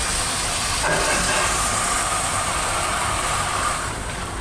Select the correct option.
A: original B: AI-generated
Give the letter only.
A